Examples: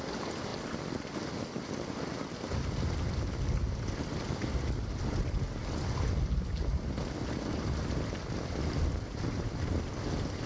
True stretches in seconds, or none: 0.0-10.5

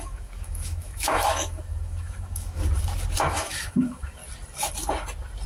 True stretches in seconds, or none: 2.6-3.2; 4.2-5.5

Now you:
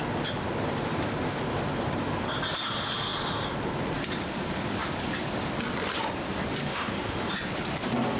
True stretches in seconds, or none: 0.0-6.6; 7.3-8.2